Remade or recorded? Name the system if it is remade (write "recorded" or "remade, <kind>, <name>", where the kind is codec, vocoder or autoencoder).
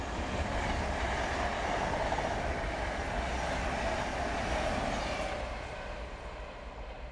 recorded